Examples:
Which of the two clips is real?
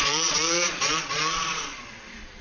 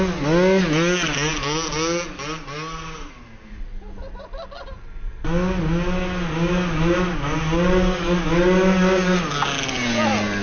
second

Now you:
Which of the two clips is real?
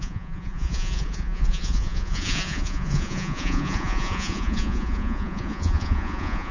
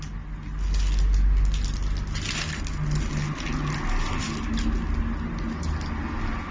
second